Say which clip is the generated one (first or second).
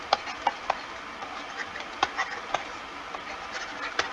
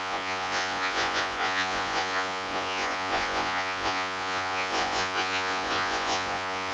second